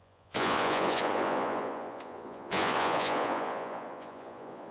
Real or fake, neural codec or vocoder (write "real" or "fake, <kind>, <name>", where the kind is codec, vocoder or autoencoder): fake, vocoder, Vocos